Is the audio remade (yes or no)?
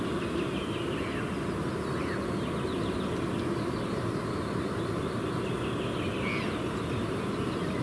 no